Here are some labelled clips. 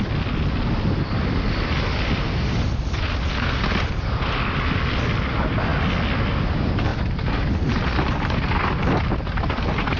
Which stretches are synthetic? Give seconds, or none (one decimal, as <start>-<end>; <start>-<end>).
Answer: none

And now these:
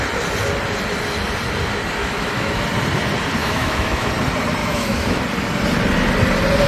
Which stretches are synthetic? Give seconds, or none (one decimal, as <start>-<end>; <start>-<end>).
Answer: 2.0-2.6; 3.4-4.1; 4.6-5.2

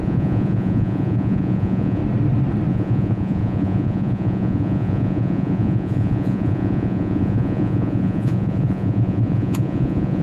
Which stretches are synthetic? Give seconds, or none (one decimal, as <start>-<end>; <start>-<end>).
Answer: 0.0-2.0; 2.7-10.2

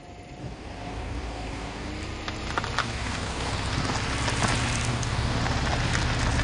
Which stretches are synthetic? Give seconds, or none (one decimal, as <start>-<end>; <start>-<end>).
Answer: 0.4-1.9; 2.8-3.5; 4.9-5.4

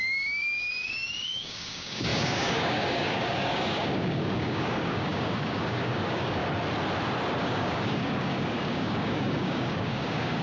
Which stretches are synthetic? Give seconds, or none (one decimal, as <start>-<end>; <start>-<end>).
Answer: 0.0-6.4; 7.4-10.4

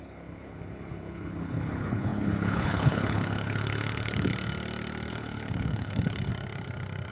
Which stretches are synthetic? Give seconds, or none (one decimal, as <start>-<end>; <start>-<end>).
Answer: 0.0-4.3; 5.1-6.3